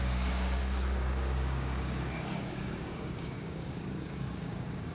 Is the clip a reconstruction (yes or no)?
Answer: yes